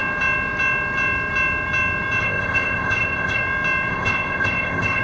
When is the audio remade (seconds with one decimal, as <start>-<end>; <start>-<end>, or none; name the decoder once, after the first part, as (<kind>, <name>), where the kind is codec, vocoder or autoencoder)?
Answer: 2.2-3.4 (codec, ZipCodec); 3.9-5.0